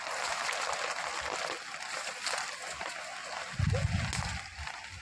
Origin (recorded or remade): recorded